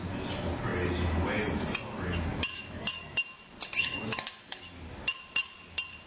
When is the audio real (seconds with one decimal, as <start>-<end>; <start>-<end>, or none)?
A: 0.0-2.3; 2.9-3.8; 4.6-6.1